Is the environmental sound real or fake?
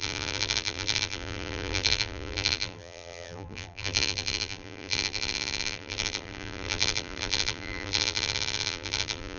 fake